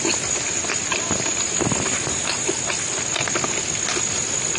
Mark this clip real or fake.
real